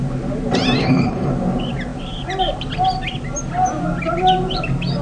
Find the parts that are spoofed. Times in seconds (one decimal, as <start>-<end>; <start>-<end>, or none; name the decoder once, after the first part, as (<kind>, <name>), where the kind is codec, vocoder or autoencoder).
0.8-1.3 (codec, HILCodec)